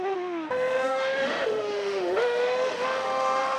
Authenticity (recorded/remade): remade